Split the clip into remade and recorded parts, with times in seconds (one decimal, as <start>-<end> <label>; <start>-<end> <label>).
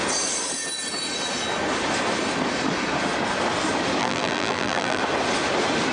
0.0-4.0 recorded; 4.0-5.0 remade; 5.0-5.9 recorded